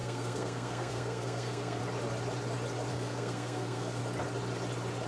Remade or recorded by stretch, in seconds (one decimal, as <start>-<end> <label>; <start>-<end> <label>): 0.0-1.8 remade; 1.8-2.9 recorded; 2.9-4.0 remade; 4.0-5.1 recorded